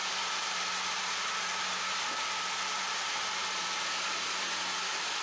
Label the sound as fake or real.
fake